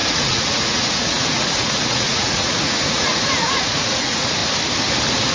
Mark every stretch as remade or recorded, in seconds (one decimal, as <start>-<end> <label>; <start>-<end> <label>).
0.0-4.4 remade; 4.4-5.3 recorded